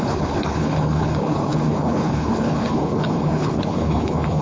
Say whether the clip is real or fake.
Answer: fake